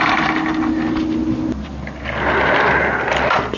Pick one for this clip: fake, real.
real